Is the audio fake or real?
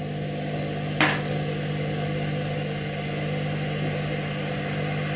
real